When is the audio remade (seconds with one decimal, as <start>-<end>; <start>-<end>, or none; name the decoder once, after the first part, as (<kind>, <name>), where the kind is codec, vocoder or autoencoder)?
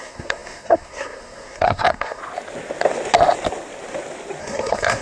0.0-2.2 (codec, SNAC); 4.4-5.0